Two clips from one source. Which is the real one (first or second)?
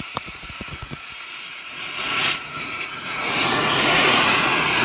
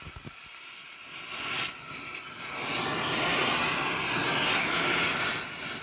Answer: second